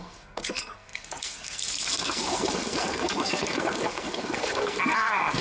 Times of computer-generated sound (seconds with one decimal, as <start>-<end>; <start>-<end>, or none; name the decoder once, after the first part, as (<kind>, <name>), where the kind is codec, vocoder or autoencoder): 0.0-5.4 (codec, SNAC)